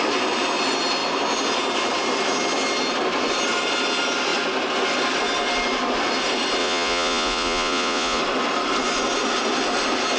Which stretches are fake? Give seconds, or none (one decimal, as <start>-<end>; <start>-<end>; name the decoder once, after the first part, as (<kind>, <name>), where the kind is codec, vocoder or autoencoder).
6.6-8.2 (vocoder, Vocos)